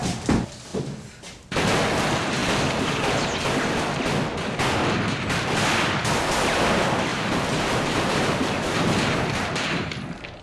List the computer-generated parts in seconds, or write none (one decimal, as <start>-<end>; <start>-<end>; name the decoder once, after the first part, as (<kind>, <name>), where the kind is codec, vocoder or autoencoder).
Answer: 7.1-10.4 (vocoder, BigVGAN v2)